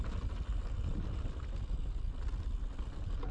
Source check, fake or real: real